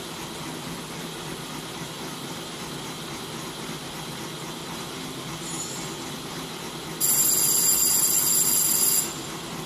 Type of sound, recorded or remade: recorded